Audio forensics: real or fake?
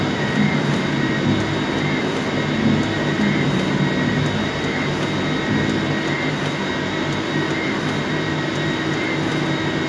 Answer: real